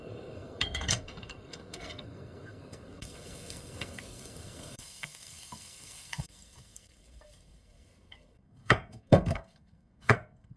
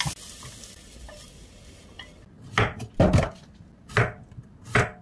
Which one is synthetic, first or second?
first